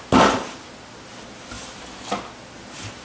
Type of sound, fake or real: real